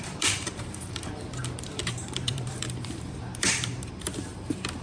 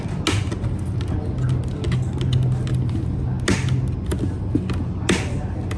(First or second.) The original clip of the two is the second